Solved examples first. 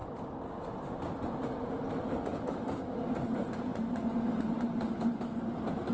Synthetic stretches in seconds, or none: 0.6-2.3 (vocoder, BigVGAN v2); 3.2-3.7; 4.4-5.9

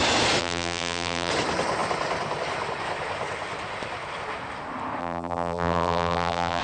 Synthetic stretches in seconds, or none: 0.4-1.3 (vocoder, BigVGAN v2); 5.0-6.6

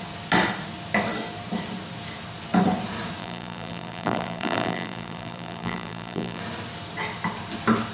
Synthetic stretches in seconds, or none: 3.2-6.4 (vocoder, BigVGAN v2)